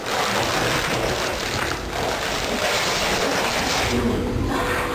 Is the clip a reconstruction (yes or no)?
no